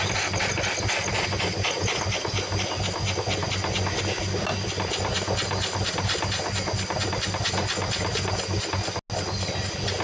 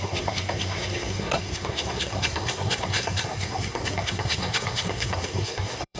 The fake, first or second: second